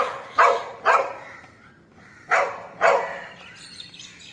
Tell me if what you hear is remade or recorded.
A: recorded